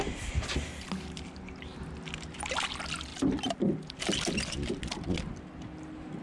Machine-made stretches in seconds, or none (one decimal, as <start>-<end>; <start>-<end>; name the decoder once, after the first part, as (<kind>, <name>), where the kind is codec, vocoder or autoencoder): none